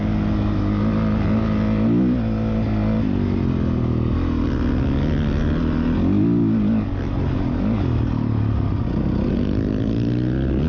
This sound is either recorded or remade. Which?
recorded